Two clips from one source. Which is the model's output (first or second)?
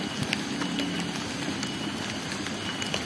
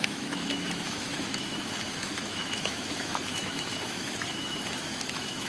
second